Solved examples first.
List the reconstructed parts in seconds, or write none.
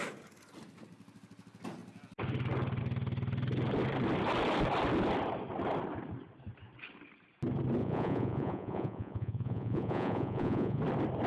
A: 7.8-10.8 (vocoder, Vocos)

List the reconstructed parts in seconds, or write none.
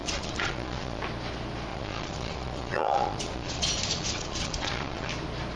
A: 0.0-1.0 (vocoder, Vocos); 1.7-5.1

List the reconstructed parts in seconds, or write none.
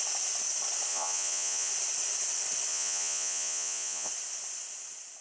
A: 0.9-1.7 (vocoder, Vocos); 2.7-4.1